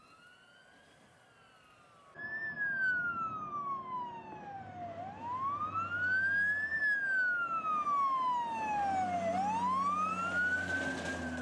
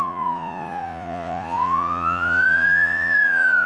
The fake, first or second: second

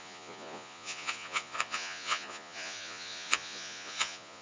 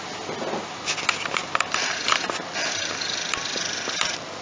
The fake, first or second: first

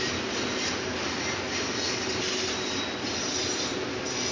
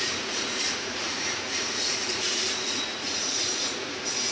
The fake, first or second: second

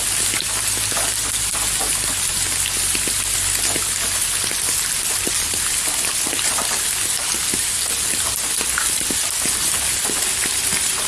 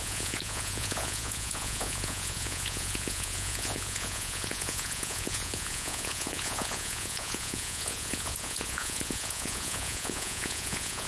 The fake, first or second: second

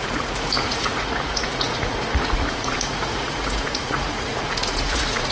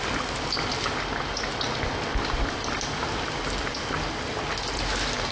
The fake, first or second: first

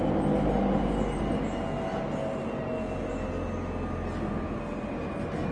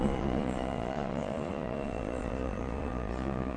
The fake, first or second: second